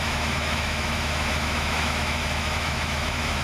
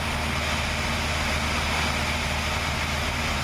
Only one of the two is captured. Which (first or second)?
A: second